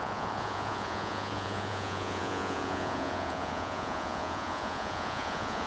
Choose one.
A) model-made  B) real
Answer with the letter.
A